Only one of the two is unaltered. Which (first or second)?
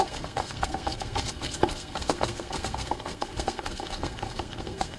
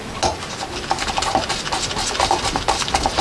second